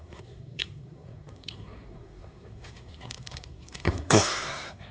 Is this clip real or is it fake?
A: fake